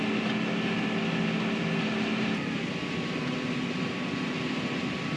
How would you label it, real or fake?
real